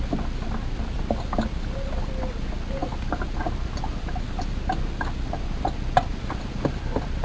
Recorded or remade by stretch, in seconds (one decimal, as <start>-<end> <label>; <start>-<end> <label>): 0.0-6.1 recorded; 6.1-6.8 remade; 6.8-7.2 recorded